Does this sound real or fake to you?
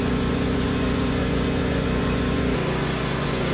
fake